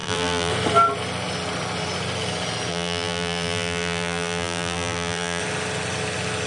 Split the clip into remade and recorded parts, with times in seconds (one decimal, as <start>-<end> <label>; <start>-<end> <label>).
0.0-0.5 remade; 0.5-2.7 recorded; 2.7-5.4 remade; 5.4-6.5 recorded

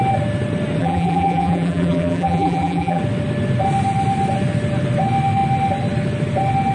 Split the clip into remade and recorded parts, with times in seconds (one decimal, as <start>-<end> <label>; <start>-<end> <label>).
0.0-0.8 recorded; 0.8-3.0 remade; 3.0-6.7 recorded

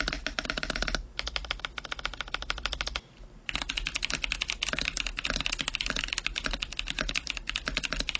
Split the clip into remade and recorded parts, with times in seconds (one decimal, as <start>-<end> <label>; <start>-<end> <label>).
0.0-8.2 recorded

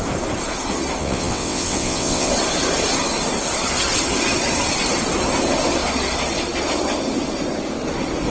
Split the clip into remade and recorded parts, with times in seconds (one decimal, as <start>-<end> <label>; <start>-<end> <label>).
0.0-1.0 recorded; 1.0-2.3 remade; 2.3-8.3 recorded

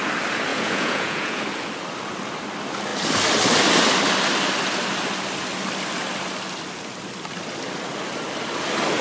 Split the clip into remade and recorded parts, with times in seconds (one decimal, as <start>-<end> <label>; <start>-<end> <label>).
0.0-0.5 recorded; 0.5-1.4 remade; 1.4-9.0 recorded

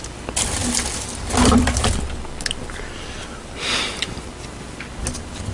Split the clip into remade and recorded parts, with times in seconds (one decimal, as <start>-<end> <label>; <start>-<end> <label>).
0.0-0.6 recorded; 0.6-3.9 remade; 3.9-5.5 recorded

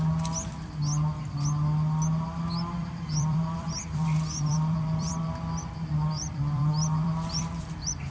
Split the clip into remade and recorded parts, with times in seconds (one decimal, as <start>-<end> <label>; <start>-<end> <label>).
0.0-2.8 recorded; 2.8-8.1 remade

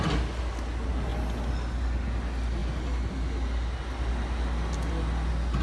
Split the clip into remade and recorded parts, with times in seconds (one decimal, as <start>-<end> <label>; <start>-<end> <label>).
0.0-5.6 recorded